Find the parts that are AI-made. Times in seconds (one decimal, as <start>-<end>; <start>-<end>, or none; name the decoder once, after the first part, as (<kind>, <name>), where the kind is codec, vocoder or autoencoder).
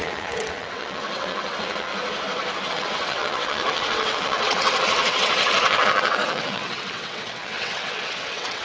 0.0-1.9 (vocoder, WaveNeXt); 2.7-8.6